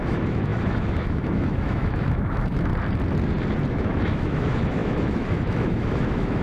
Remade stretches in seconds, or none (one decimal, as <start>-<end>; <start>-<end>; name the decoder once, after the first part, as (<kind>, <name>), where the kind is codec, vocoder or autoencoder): 0.0-2.7 (autoencoder, DAC-VAE); 3.7-6.4